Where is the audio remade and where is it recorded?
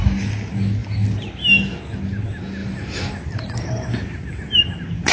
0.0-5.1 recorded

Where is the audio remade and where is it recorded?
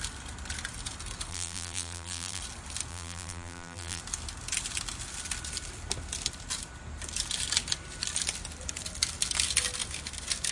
0.0-1.3 recorded; 1.3-2.4 remade; 2.4-2.9 recorded; 2.9-4.0 remade; 4.0-10.5 recorded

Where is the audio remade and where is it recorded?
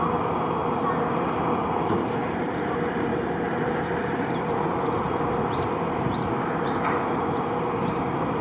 0.0-1.6 recorded; 1.6-2.5 remade; 2.5-3.1 recorded; 3.1-3.7 remade; 3.7-8.4 recorded